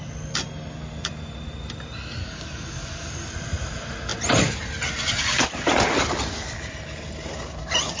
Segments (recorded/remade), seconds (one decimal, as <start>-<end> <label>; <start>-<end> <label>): 0.0-2.2 recorded; 2.2-3.3 remade; 3.3-8.0 recorded